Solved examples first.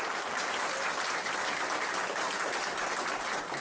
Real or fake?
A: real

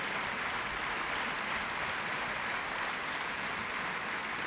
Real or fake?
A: fake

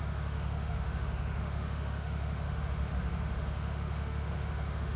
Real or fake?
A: fake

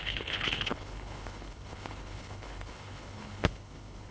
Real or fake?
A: fake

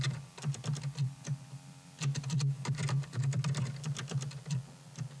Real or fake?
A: real